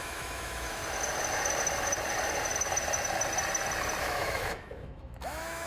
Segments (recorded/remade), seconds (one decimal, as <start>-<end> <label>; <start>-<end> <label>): 0.0-0.8 remade; 0.8-4.0 recorded; 4.0-5.7 remade

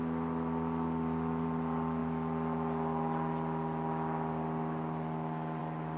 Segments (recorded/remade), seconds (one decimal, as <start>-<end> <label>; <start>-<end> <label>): 0.0-6.0 recorded

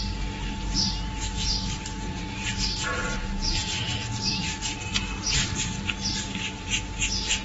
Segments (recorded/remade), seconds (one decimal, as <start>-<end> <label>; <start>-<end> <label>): 0.0-7.4 recorded

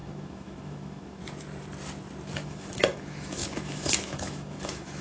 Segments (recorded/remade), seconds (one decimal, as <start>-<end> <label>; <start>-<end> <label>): 0.0-1.2 remade; 1.2-2.4 recorded; 2.4-5.0 remade

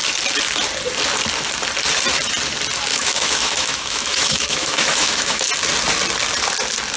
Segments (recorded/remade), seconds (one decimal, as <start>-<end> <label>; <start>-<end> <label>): 0.0-2.9 recorded; 2.9-5.5 remade; 5.5-7.0 recorded

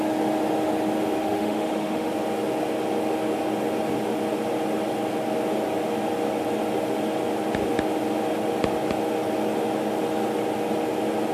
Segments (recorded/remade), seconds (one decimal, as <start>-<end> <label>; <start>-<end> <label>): 0.0-1.2 recorded; 1.2-2.1 remade; 2.1-11.3 recorded

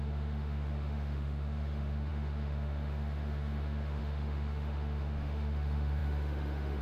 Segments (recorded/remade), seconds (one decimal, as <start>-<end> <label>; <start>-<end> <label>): 0.0-6.8 remade